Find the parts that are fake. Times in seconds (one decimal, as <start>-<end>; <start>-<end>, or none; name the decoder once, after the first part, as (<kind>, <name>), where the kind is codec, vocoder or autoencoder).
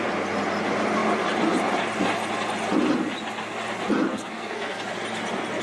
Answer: 4.1-4.8 (codec, SNAC)